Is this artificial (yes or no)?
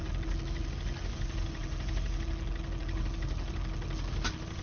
no